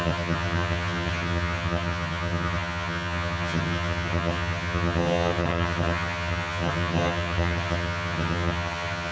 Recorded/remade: remade